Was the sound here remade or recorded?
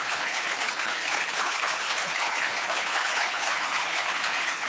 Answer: remade